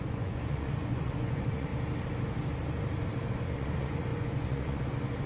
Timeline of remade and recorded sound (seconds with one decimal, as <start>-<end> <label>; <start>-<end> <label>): 0.0-1.7 remade; 1.7-3.3 recorded; 3.3-5.3 remade

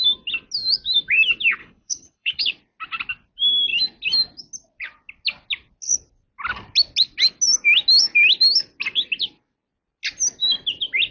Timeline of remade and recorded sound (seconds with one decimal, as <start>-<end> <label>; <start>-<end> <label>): 0.0-1.6 recorded; 1.6-2.4 remade; 2.4-11.1 recorded

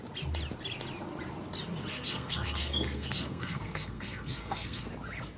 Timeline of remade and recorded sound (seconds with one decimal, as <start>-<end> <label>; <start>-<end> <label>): 0.0-1.9 recorded; 1.9-4.9 remade; 4.9-5.4 recorded

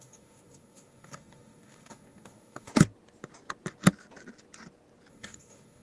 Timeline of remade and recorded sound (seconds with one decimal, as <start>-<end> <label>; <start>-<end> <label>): 0.0-2.7 remade; 2.7-5.1 recorded; 5.1-5.8 remade

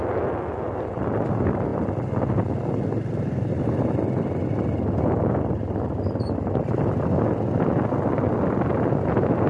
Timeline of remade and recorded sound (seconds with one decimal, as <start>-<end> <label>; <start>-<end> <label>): 0.0-9.5 recorded

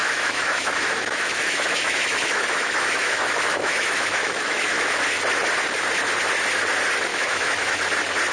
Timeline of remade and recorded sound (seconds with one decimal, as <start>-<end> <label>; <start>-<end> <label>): 0.0-5.0 remade; 5.0-7.1 recorded; 7.1-7.8 remade; 7.8-8.3 recorded

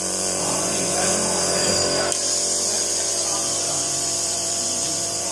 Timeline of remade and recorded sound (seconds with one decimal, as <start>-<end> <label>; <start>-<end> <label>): 0.0-1.1 remade; 1.1-2.7 recorded; 2.7-5.3 remade

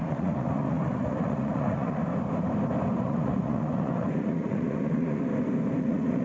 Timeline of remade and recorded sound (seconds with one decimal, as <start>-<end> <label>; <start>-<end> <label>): 0.0-2.0 remade; 2.0-3.0 recorded; 3.0-5.3 remade; 5.3-5.8 recorded; 5.8-6.2 remade